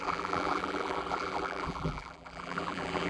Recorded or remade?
remade